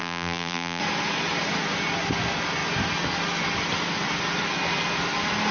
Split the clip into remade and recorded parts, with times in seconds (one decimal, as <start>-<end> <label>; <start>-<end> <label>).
0.0-0.8 remade; 0.8-5.5 recorded